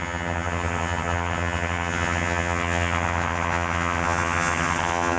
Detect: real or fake fake